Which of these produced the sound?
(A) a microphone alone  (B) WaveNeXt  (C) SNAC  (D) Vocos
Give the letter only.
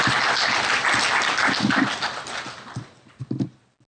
A